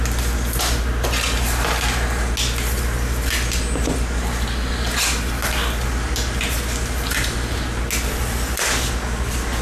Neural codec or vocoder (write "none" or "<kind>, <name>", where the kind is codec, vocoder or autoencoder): none